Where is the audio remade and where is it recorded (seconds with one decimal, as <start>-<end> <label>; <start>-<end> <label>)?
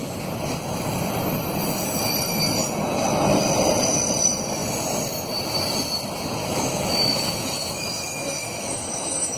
0.0-6.4 recorded; 6.4-9.4 remade